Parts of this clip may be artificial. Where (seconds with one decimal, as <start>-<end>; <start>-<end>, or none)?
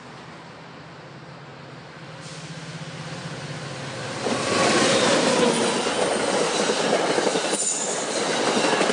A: 1.5-2.1